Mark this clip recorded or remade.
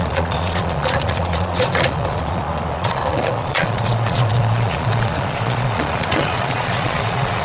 remade